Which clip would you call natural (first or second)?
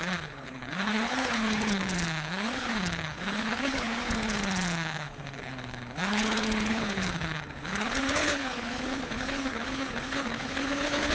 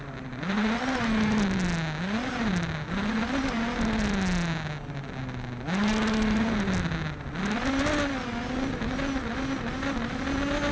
second